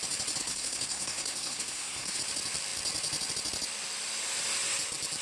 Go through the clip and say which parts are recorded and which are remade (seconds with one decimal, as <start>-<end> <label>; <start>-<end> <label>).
0.0-0.4 recorded; 0.4-2.2 remade; 2.2-5.2 recorded